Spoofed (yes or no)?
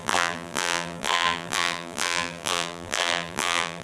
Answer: yes